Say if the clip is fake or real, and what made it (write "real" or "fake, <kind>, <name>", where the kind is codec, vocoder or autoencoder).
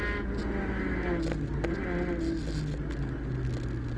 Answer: real